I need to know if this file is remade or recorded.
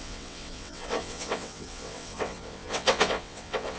remade